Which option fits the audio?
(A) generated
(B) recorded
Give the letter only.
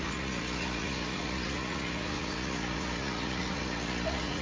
A